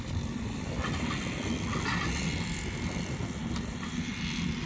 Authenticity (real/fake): fake